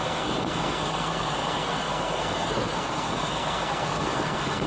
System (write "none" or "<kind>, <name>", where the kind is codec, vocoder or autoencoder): codec, SNAC